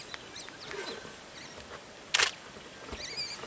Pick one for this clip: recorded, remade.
recorded